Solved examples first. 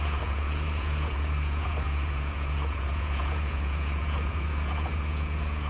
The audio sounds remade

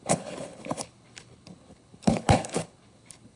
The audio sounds remade